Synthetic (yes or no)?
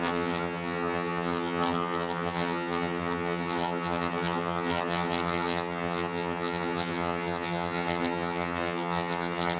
yes